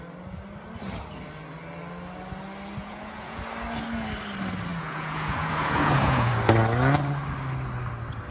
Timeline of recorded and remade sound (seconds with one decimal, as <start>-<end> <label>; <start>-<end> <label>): 0.0-2.8 recorded; 2.8-3.4 remade; 3.4-4.7 recorded; 4.7-6.3 remade; 6.3-8.3 recorded